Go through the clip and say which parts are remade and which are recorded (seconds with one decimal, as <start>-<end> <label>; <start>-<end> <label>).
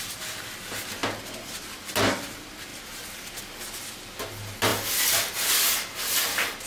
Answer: 0.0-4.7 recorded; 4.7-5.5 remade; 5.5-6.7 recorded